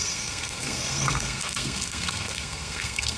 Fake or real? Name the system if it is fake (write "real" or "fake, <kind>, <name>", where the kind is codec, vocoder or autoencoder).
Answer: fake, codec, SNAC